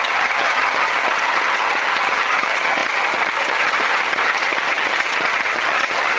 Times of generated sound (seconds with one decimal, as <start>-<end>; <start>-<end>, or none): 0.0-6.2

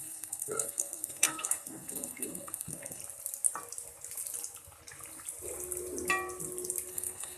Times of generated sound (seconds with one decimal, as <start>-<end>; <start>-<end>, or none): 0.0-3.0; 6.9-7.4

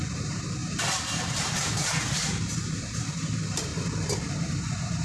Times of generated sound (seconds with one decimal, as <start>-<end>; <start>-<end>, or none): 0.0-3.7; 4.6-5.0

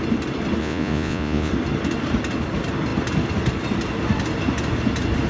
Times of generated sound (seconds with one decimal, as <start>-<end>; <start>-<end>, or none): 0.6-1.5

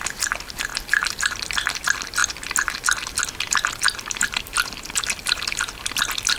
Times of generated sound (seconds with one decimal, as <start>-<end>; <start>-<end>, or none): 0.7-1.4

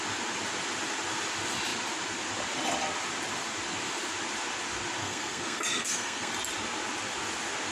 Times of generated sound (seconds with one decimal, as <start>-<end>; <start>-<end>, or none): 5.0-6.3

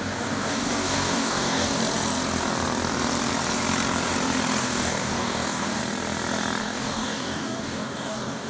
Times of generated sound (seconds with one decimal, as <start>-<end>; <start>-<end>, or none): 0.0-1.8; 4.6-5.8; 6.6-8.5

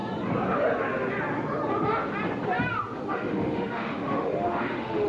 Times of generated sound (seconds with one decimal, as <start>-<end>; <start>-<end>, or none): 3.1-5.1